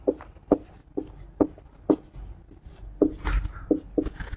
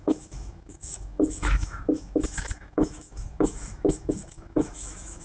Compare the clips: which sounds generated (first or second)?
second